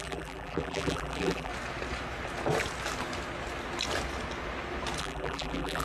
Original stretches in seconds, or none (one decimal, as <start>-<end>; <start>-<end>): 1.5-5.0